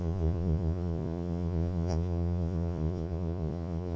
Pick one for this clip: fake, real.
fake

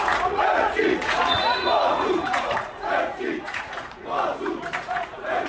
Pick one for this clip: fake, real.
fake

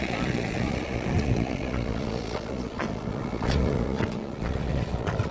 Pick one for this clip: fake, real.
fake